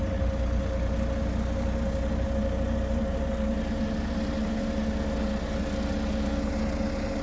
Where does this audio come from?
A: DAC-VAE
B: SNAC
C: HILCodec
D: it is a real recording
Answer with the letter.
D